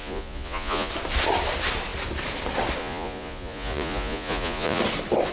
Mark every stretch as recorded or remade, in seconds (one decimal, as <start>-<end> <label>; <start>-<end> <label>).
0.0-0.9 remade; 0.9-2.8 recorded; 2.8-4.8 remade; 4.8-5.3 recorded